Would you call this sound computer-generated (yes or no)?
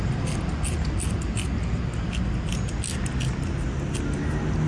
no